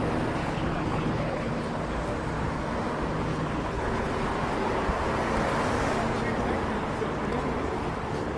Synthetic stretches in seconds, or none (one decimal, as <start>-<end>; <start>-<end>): 0.4-1.5; 3.3-4.1